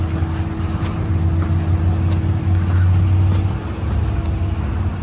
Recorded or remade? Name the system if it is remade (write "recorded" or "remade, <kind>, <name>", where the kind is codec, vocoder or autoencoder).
recorded